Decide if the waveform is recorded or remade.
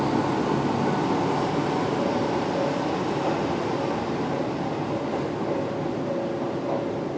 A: recorded